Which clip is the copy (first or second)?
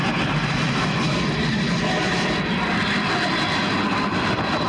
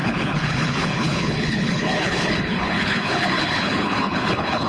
second